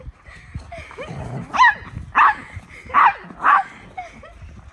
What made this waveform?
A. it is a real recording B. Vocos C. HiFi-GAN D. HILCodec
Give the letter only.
A